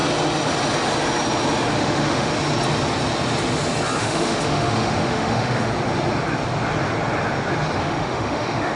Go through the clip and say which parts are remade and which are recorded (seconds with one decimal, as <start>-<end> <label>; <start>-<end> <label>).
0.0-1.8 recorded; 1.8-2.3 remade; 2.3-4.0 recorded; 4.0-5.7 remade; 5.7-7.8 recorded; 7.8-8.8 remade

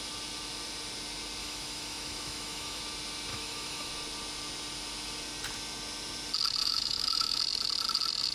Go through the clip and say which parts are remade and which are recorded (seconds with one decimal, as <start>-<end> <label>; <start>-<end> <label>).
0.0-1.4 recorded; 1.4-2.8 remade; 2.8-3.3 recorded; 3.3-3.9 remade; 3.9-6.6 recorded; 6.6-7.4 remade; 7.4-8.3 recorded

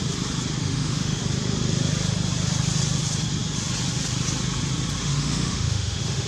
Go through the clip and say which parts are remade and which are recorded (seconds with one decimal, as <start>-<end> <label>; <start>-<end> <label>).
0.0-0.6 recorded; 0.6-1.2 remade; 1.2-5.0 recorded; 5.0-6.3 remade

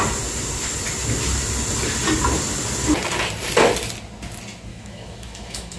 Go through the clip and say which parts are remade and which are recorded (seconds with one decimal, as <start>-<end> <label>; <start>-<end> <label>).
0.0-4.7 recorded; 4.7-5.8 remade

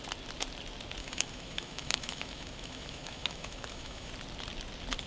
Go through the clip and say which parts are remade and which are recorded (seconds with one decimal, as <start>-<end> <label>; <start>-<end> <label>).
0.0-1.0 recorded; 1.0-4.1 remade; 4.1-5.1 recorded

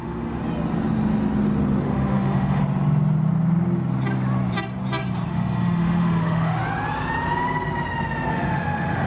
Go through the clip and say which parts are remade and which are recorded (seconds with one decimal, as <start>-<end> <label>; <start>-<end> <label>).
0.0-0.4 remade; 0.4-1.8 recorded; 1.8-2.6 remade; 2.6-5.3 recorded; 5.3-6.6 remade; 6.6-8.3 recorded; 8.3-9.1 remade

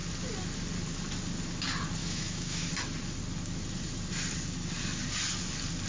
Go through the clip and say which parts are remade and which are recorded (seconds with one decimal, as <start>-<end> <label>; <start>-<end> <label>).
0.0-2.0 recorded; 2.0-2.7 remade; 2.7-5.9 recorded

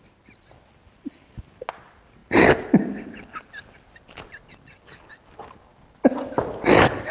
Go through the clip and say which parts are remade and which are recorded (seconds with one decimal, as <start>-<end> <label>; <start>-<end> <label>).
0.0-7.1 recorded